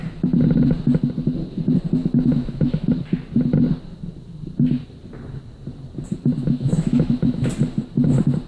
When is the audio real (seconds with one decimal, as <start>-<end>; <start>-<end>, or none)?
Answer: 0.0-2.0; 2.9-6.4; 7.5-8.5